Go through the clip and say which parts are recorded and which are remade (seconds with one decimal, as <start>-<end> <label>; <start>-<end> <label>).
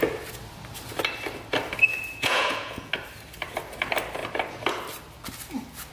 0.0-1.9 recorded; 1.9-2.9 remade; 2.9-5.9 recorded